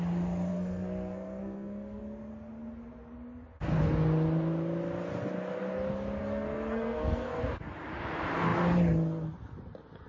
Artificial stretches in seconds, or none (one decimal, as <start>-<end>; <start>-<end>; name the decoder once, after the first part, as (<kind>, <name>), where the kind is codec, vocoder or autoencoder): 0.5-2.0 (codec, SNAC); 6.2-7.4